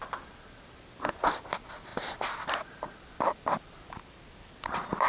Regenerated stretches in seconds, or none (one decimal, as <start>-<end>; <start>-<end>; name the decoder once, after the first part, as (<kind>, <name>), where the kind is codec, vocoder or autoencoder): 0.0-5.1 (vocoder, BigVGAN v2)